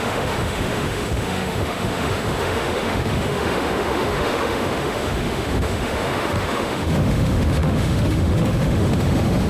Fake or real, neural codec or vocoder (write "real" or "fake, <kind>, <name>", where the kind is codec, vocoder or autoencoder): fake, autoencoder, DAC-VAE